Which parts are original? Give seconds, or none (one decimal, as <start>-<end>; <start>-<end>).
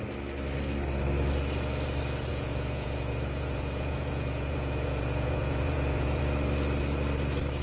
0.0-2.3; 6.2-7.6